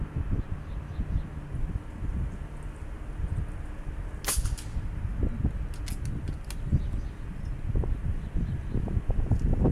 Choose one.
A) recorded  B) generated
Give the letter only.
A